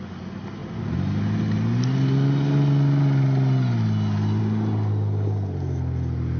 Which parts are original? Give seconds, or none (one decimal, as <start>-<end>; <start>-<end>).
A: 0.0-6.4